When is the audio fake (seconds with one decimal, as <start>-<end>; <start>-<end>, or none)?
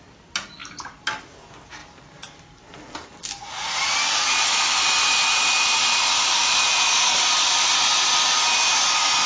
none